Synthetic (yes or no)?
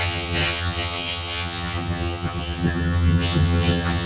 yes